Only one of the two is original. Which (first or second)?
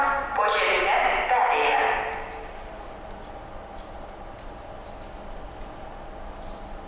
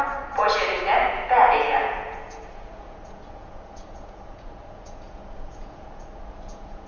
first